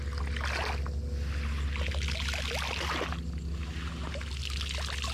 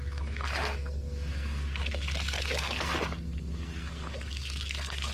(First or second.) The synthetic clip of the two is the second